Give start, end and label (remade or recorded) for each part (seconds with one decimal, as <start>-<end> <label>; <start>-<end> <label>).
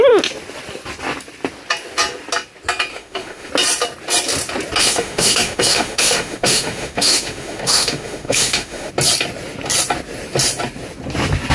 0.0-2.9 recorded; 2.9-3.5 remade; 3.5-4.8 recorded; 4.8-8.9 remade; 8.9-11.5 recorded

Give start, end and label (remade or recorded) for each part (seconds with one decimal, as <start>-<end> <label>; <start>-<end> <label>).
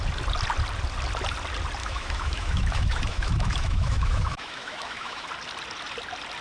0.0-1.8 recorded; 1.8-5.3 remade; 5.3-6.4 recorded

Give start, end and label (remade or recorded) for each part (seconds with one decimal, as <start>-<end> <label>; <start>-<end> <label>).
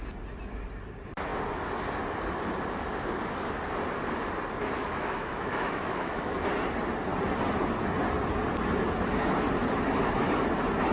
0.0-4.8 recorded; 4.8-6.3 remade; 6.3-10.9 recorded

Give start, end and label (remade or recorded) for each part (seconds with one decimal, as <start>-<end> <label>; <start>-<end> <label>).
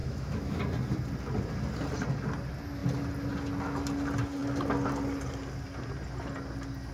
0.0-0.6 remade; 0.6-6.9 recorded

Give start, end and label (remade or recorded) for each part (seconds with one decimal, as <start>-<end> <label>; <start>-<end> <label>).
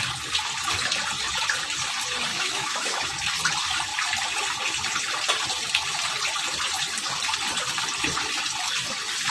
0.0-2.3 recorded; 2.3-3.1 remade; 3.1-9.3 recorded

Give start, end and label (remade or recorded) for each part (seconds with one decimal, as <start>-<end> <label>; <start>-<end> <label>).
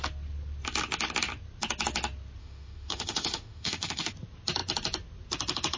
0.0-2.4 recorded; 2.4-4.1 remade; 4.1-5.8 recorded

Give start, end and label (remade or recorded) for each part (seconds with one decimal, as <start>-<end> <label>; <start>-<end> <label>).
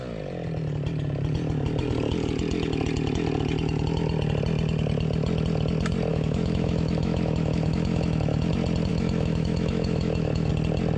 0.0-6.1 recorded; 6.1-8.5 remade; 8.5-8.9 recorded; 8.9-10.5 remade; 10.5-11.0 recorded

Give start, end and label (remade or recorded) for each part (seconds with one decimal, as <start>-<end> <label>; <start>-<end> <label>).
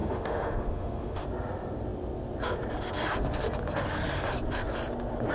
0.0-1.2 remade; 1.2-5.3 recorded